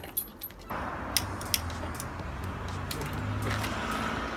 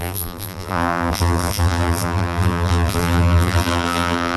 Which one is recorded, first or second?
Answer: first